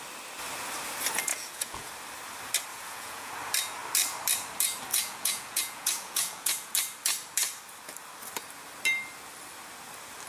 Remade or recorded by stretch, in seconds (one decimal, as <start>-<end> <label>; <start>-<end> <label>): 0.0-1.3 recorded; 1.3-1.9 remade; 1.9-2.7 recorded; 2.7-3.3 remade; 3.3-4.9 recorded; 4.9-6.7 remade; 6.7-10.3 recorded